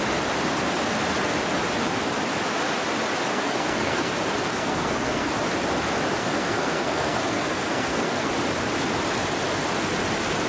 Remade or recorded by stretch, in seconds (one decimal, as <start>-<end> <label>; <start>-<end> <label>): 0.0-3.3 recorded; 3.3-4.1 remade; 4.1-4.5 recorded; 4.5-5.3 remade; 5.3-6.2 recorded; 6.2-8.3 remade; 8.3-10.5 recorded